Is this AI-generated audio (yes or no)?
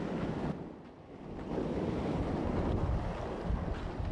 no